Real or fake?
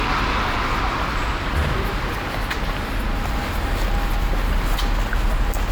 real